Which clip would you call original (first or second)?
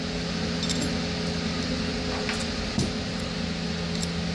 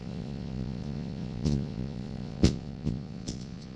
first